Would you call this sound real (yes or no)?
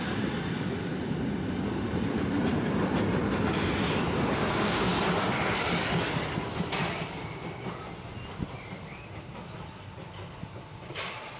yes